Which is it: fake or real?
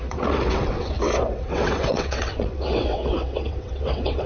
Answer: fake